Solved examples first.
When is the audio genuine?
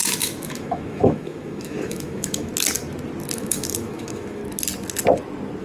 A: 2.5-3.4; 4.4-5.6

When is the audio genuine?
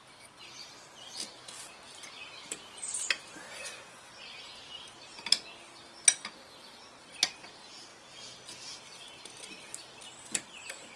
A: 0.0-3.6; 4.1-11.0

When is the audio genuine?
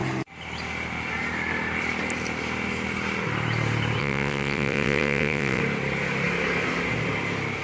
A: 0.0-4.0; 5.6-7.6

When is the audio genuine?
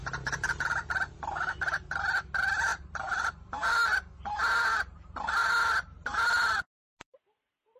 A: 0.6-2.7; 3.5-5.4; 6.6-7.8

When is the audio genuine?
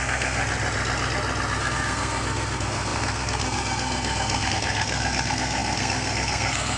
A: 0.4-1.6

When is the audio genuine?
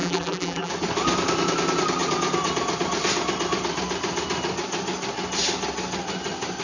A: 0.7-6.6